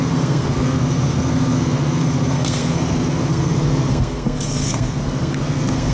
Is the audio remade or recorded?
remade